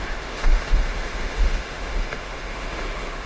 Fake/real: fake